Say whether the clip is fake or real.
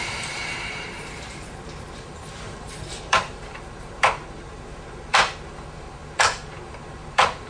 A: fake